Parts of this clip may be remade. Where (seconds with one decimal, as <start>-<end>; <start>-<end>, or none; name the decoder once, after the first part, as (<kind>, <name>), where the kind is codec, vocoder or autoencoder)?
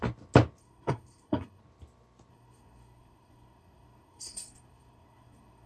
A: 0.6-1.6 (codec, SNAC); 2.3-5.7